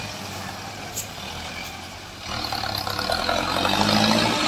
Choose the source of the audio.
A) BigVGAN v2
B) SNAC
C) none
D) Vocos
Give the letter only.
C